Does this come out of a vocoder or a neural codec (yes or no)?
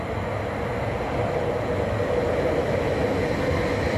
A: no